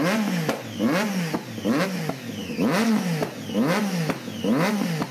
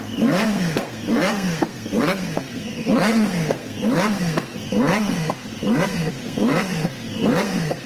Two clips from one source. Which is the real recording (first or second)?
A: first